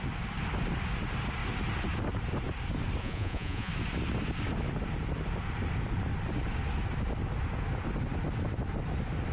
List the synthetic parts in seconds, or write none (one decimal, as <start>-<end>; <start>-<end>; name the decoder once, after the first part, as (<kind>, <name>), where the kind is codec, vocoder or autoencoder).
3.0-3.7 (vocoder, Vocos)